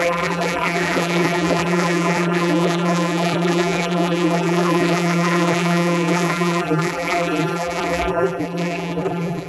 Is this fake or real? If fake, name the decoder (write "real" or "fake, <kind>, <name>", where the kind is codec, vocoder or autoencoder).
fake, vocoder, BigVGAN v2